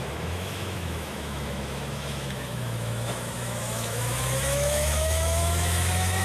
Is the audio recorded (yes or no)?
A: no